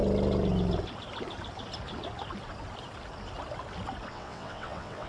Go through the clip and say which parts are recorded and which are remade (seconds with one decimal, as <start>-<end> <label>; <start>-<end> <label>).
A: 0.0-4.1 recorded; 4.1-5.1 remade